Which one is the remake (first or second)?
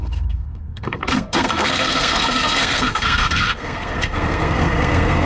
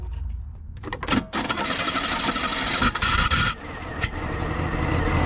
first